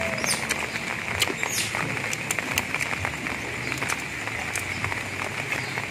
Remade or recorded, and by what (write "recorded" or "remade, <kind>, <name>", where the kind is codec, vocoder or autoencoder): recorded